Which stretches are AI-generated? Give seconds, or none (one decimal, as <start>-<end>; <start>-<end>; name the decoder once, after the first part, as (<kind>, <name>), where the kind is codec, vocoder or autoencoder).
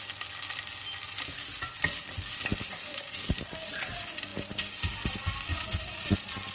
5.5-6.1 (vocoder, Vocos)